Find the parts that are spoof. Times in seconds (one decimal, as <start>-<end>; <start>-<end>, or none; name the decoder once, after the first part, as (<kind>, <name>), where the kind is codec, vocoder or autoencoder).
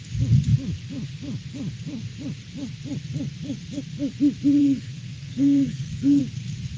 4.6-6.2 (codec, SNAC)